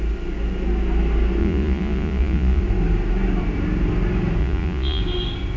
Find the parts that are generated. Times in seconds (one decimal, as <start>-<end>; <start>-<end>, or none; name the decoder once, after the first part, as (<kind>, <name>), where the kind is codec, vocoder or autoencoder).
1.4-2.6 (vocoder, Vocos); 4.4-5.0